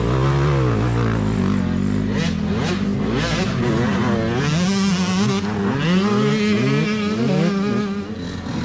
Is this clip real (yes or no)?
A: yes